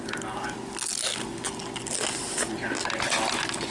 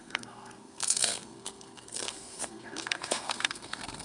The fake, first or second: second